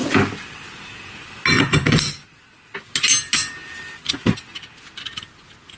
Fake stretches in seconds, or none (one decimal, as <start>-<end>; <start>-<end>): none